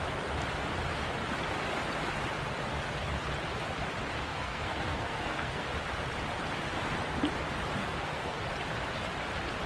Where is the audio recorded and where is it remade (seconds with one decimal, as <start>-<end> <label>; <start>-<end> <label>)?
0.0-4.3 recorded; 4.3-5.7 remade; 5.7-7.8 recorded; 7.8-8.4 remade; 8.4-9.7 recorded